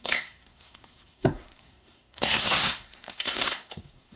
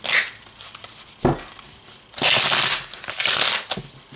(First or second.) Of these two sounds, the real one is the second